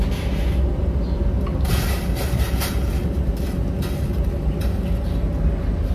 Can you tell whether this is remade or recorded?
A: recorded